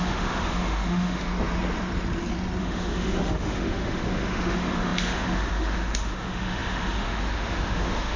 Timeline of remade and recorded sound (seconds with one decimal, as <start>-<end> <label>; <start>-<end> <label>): 0.0-1.3 remade; 1.3-2.6 recorded; 2.6-8.2 remade